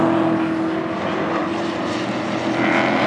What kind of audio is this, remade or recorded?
recorded